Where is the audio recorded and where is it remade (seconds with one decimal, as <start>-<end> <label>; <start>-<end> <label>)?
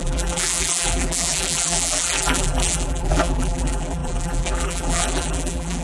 0.0-5.8 remade